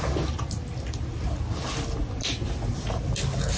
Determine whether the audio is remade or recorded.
recorded